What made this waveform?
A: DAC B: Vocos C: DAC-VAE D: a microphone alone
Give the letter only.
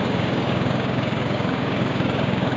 A